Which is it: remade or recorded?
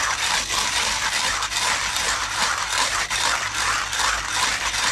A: recorded